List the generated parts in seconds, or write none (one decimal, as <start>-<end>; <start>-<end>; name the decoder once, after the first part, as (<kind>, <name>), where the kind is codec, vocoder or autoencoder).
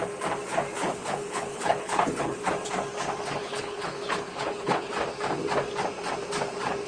0.8-2.5 (codec, HILCodec); 3.4-4.9